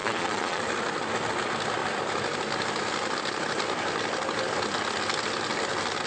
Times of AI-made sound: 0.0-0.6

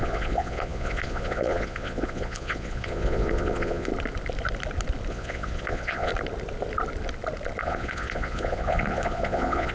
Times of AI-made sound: 0.0-3.9; 5.1-6.1; 7.6-9.7

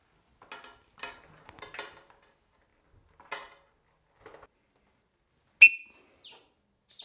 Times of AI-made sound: none

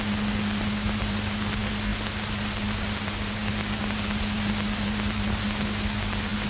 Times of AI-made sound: none

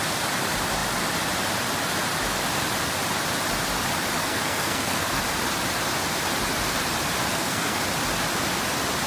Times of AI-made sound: 4.2-5.2; 7.3-7.8

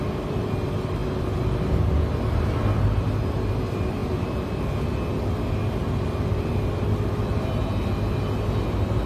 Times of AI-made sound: none

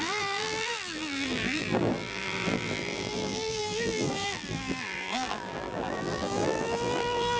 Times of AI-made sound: 0.0-7.4

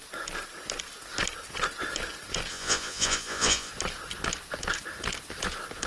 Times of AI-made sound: 2.5-3.7